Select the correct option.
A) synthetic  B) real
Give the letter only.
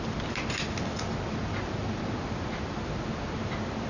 B